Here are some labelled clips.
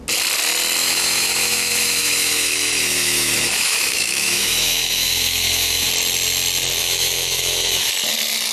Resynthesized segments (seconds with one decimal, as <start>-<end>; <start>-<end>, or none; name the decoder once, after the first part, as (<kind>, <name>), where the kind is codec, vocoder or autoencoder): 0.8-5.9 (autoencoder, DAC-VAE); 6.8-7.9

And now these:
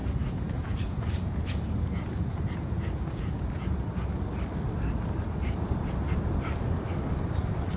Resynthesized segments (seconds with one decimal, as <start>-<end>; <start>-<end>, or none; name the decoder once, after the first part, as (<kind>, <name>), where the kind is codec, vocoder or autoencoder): 0.0-4.2 (vocoder, Vocos)

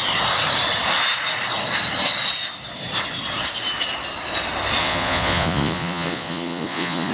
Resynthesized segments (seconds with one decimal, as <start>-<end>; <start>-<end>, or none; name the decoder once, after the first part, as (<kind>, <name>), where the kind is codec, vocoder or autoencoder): 4.8-7.1 (vocoder, Vocos)

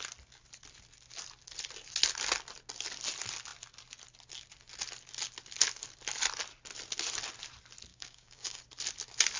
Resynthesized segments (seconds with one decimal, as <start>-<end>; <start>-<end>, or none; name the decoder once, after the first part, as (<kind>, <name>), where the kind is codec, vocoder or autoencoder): 7.9-8.6 (codec, DAC)